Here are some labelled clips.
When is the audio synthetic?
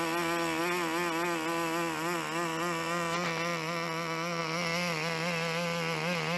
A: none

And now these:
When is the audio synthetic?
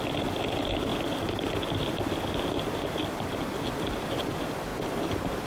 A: none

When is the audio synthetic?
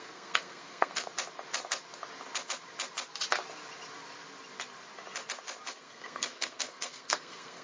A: 0.0-1.1 (codec, SNAC); 5.7-7.6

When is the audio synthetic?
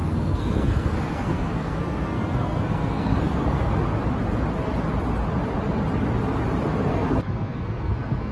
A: 0.0-3.7 (codec, SNAC); 6.9-8.3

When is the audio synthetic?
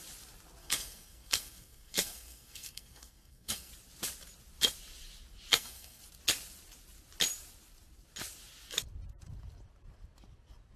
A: 0.6-3.7 (codec, SNAC); 5.5-6.0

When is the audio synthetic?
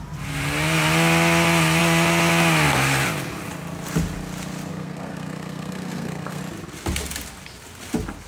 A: 4.7-6.4 (codec, SNAC)